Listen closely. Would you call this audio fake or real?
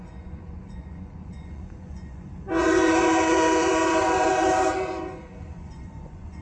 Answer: fake